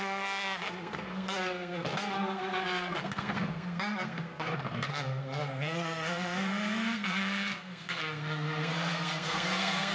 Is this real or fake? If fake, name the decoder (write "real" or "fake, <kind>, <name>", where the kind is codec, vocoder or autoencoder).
fake, codec, SNAC